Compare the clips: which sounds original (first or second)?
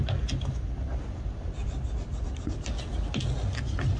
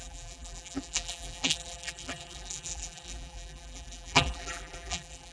first